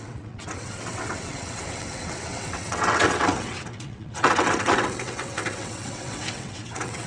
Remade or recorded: remade